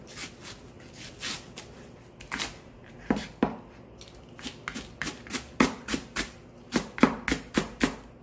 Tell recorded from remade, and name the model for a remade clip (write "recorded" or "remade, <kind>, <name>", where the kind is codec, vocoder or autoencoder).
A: recorded